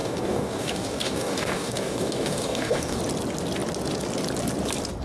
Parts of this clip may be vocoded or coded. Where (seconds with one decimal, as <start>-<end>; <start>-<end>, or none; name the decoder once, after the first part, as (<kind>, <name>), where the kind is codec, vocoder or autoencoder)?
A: 0.0-3.0 (codec, DAC)